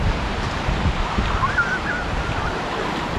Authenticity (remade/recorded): recorded